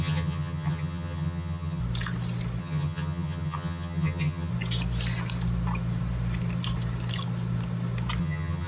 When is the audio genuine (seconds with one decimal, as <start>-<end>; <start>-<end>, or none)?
1.8-2.6; 4.5-8.2